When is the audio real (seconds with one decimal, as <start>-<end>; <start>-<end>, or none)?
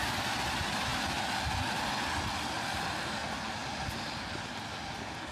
0.0-5.3